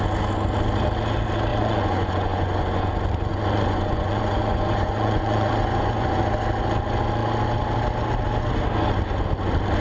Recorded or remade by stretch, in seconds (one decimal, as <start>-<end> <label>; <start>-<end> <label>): 0.0-1.5 recorded; 1.5-2.9 remade; 2.9-3.3 recorded; 3.3-6.2 remade; 6.2-9.8 recorded

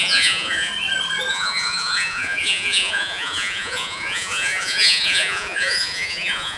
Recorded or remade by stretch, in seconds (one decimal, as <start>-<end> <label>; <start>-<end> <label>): 0.0-0.7 remade; 0.7-1.3 recorded; 1.3-6.6 remade